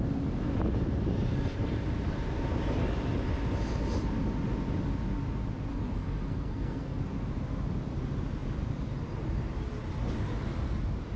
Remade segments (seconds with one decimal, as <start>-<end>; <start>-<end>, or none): 5.7-7.0